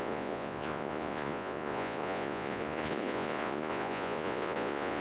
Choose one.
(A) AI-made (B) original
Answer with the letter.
A